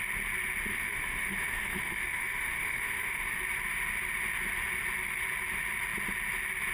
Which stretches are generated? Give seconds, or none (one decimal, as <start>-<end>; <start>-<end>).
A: 0.7-3.4